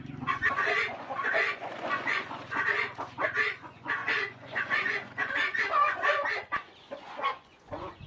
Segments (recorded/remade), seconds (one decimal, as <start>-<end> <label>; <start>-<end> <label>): 0.0-8.1 remade